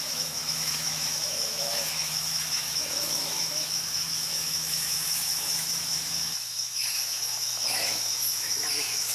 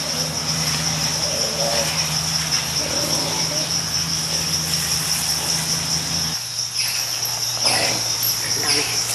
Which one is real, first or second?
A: second